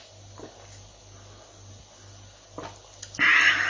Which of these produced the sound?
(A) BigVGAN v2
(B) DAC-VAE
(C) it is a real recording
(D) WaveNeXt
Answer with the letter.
C